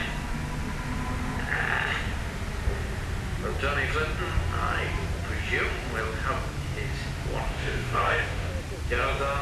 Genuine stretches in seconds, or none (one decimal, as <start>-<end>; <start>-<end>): 0.0-7.5; 8.5-9.4